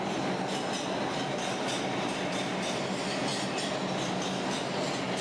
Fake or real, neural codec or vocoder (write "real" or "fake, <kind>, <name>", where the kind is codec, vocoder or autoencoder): real